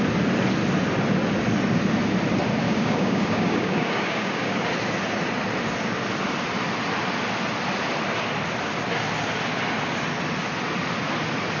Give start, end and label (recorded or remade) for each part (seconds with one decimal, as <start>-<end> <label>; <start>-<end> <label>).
0.0-2.6 recorded; 2.6-4.6 remade; 4.6-11.6 recorded